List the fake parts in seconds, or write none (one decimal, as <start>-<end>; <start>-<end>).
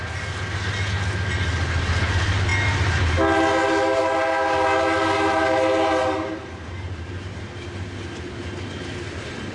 6.0-7.4